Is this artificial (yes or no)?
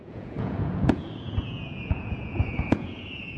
yes